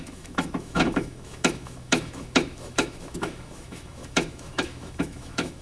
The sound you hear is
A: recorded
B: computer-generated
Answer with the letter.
B